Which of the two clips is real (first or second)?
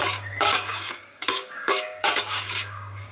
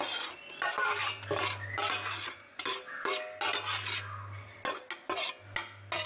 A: second